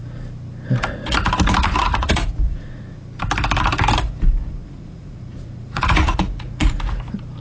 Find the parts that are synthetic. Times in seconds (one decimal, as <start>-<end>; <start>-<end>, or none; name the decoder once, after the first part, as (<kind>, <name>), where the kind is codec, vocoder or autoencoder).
1.9-2.8 (vocoder, Vocos); 4.6-6.8